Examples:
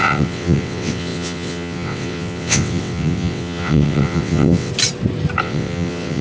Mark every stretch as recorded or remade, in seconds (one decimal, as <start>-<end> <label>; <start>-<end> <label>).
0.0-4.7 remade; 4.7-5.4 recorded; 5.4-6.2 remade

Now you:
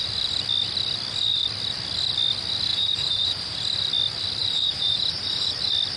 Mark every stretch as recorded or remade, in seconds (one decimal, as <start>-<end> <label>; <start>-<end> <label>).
0.0-2.7 recorded; 2.7-3.6 remade; 3.6-4.4 recorded; 4.4-5.5 remade; 5.5-6.0 recorded

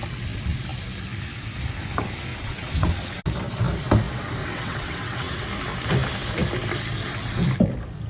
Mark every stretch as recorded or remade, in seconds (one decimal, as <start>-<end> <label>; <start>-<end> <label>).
0.0-2.3 recorded; 2.3-3.2 remade; 3.2-4.4 recorded; 4.4-5.5 remade; 5.5-8.1 recorded